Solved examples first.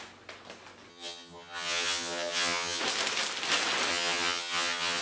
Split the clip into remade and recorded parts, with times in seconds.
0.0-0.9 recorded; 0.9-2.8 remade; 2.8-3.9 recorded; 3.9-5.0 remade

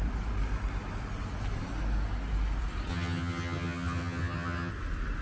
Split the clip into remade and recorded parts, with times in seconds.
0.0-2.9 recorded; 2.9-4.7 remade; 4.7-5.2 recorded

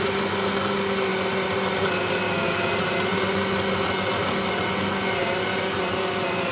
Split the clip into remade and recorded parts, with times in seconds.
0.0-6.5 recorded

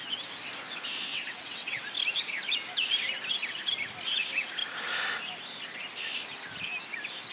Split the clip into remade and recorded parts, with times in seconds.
0.0-1.1 recorded; 1.1-1.8 remade; 1.8-7.3 recorded

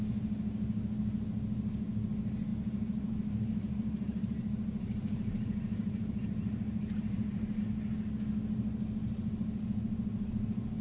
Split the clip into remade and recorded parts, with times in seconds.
0.0-2.5 recorded; 2.5-7.6 remade; 7.6-10.8 recorded

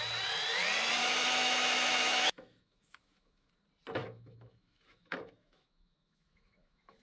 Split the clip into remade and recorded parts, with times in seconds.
0.0-1.0 recorded; 1.0-3.5 remade; 3.5-4.0 recorded; 4.0-7.0 remade